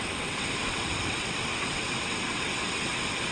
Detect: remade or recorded remade